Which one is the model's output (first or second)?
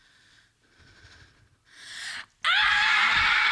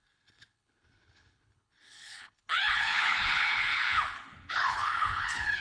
second